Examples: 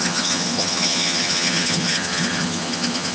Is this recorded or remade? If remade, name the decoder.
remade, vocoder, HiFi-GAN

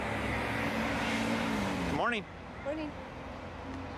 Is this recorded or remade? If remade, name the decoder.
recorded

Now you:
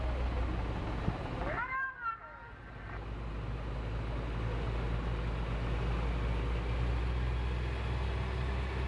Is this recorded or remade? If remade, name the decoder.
recorded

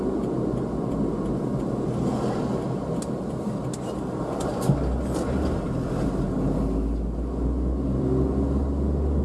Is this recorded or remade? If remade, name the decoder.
recorded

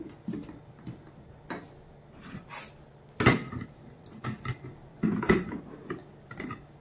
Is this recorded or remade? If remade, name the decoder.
recorded